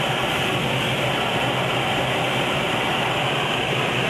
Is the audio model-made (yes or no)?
no